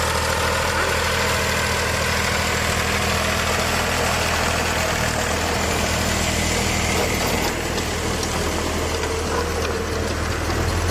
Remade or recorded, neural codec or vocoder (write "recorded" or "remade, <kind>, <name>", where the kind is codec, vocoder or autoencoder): recorded